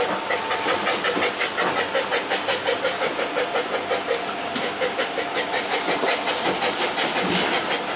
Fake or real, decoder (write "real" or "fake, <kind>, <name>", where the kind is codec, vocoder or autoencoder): real